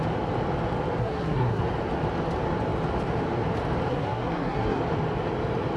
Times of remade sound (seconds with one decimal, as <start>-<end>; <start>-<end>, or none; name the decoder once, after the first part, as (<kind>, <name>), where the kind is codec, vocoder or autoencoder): 1.0-1.6 (codec, SNAC); 3.9-4.8